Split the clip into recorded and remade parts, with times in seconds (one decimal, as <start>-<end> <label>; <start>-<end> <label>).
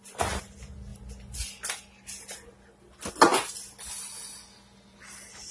0.0-5.5 recorded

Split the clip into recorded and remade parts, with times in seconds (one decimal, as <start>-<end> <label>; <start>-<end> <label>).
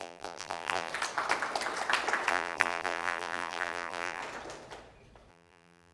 0.0-0.9 remade; 0.9-2.3 recorded; 2.3-4.2 remade; 4.2-5.3 recorded; 5.3-5.9 remade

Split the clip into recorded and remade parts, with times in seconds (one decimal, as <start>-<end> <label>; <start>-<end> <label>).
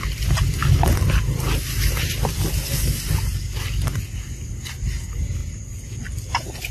0.0-6.7 recorded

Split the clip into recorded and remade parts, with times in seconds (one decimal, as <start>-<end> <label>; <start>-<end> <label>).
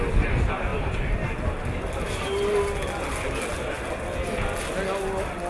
0.0-5.5 recorded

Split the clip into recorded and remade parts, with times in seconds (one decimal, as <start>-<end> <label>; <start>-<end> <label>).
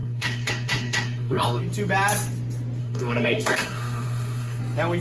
0.0-1.6 remade; 1.6-2.8 recorded; 2.8-4.6 remade; 4.6-5.0 recorded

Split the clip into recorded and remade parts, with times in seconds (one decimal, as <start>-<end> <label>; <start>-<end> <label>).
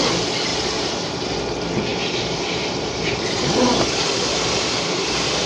0.0-1.9 recorded; 1.9-5.5 remade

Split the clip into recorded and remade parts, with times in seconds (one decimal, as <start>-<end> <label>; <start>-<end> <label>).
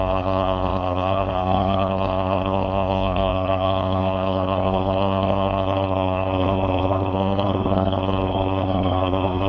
0.0-9.5 remade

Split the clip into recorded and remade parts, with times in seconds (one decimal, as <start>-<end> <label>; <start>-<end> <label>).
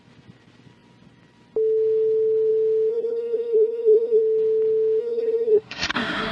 0.0-2.9 recorded; 2.9-4.2 remade; 4.2-5.0 recorded; 5.0-6.3 remade